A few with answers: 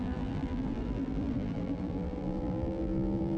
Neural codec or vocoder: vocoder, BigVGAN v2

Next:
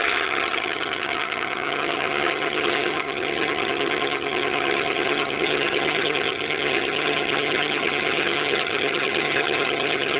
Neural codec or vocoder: vocoder, HiFi-GAN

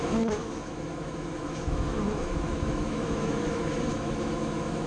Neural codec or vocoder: autoencoder, DAC-VAE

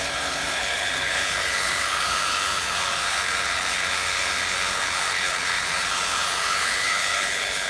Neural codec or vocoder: codec, HILCodec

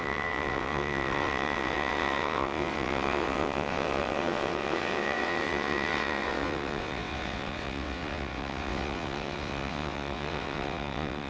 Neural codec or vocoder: vocoder, WaveNeXt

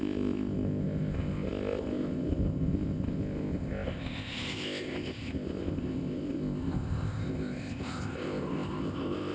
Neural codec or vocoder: codec, ZipCodec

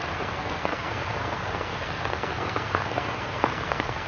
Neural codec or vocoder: codec, SNAC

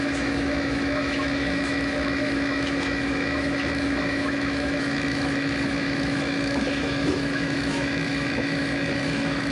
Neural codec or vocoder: autoencoder, DAC-VAE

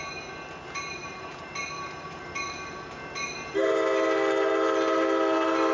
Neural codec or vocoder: none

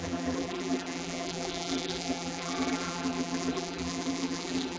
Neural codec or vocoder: vocoder, BigVGAN v2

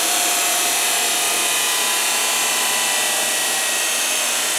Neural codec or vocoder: none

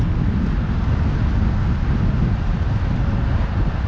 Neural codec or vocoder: none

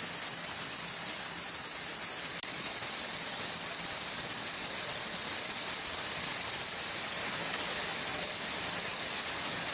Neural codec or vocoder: none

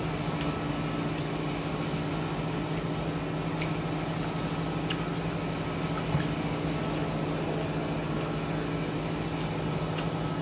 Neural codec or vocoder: none